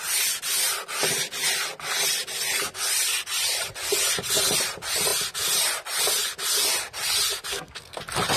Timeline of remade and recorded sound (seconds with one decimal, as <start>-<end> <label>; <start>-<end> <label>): 0.0-7.5 recorded; 7.5-8.0 remade; 8.0-8.4 recorded

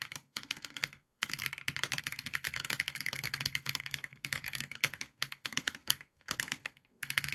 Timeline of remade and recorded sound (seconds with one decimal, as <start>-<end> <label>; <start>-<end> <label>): 0.0-1.4 remade; 1.4-2.0 recorded; 2.0-7.3 remade

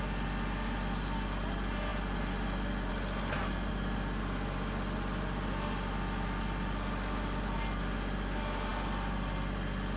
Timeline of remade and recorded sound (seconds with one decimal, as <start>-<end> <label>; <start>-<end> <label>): 0.0-10.0 recorded

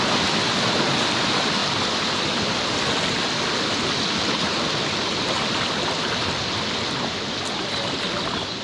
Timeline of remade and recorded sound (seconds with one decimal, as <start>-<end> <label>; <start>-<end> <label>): 0.0-8.6 recorded